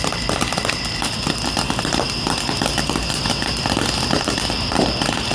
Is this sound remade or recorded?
recorded